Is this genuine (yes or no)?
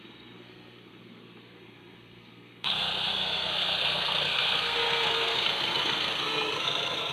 no